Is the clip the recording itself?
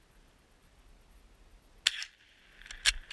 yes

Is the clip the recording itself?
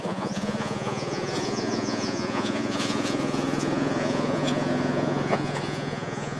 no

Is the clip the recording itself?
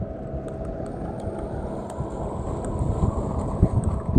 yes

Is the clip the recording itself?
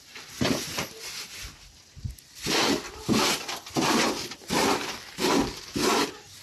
yes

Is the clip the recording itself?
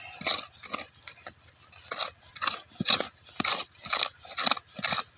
yes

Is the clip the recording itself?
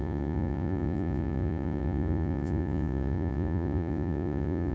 no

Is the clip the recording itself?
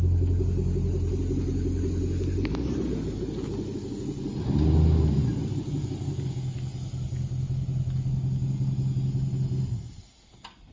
yes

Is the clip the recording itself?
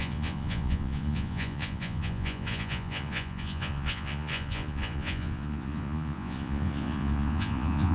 no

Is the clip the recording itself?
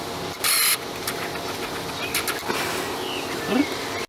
yes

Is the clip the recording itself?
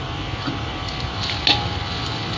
yes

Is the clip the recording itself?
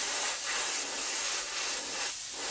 yes